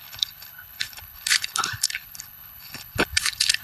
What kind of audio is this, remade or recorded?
remade